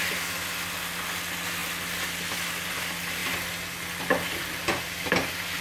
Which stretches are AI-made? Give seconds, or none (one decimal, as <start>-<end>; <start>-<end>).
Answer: none